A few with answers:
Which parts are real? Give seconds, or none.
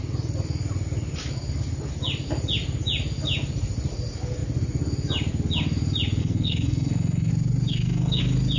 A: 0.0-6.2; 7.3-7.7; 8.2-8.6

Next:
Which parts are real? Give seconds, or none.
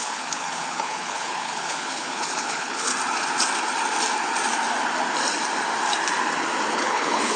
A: 2.9-6.7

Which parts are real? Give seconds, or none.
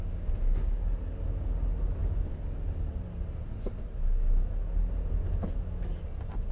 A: 0.0-6.5